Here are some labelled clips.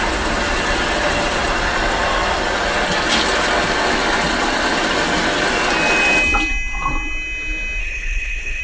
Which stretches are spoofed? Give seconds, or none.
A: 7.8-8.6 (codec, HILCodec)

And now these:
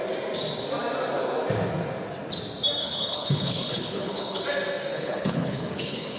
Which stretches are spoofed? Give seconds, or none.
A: 2.8-4.4 (codec, HILCodec); 4.9-6.2